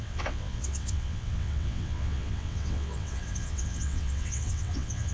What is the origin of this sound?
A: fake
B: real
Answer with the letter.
A